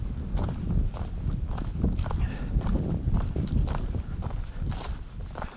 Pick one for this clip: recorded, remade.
recorded